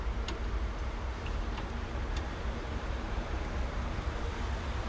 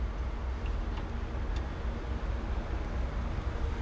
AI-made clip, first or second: first